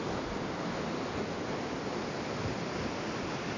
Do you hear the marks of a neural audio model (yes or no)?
no